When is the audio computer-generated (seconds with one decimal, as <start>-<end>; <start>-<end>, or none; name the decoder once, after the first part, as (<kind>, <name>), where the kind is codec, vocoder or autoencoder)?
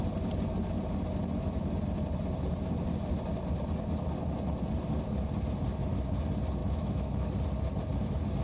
6.6-7.3 (autoencoder, DAC-VAE)